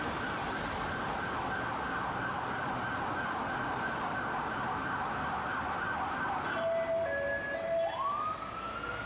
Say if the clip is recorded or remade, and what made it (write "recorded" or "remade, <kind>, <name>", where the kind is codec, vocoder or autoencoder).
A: recorded